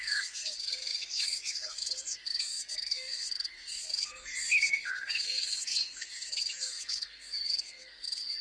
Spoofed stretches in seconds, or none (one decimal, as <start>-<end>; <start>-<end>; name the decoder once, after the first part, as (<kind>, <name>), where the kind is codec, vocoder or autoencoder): 0.0-8.4 (codec, SNAC)